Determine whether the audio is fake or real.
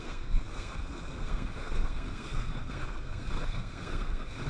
fake